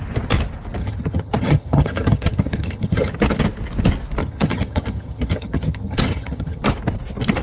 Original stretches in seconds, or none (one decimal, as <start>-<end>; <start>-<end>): 0.0-0.8; 3.1-4.2; 6.6-7.4